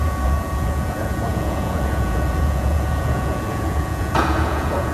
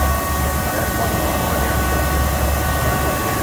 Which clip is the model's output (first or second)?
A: first